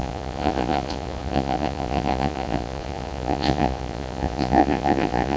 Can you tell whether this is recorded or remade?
remade